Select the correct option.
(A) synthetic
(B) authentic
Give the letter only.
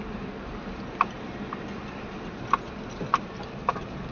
B